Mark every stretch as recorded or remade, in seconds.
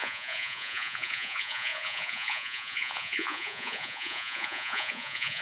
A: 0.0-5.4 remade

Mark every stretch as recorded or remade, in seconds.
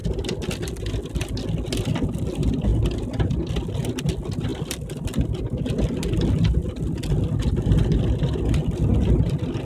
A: 0.0-9.6 recorded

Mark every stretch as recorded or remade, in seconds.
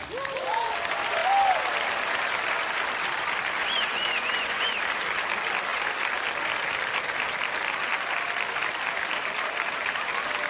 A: 0.0-3.6 recorded; 3.6-4.7 remade; 4.7-10.5 recorded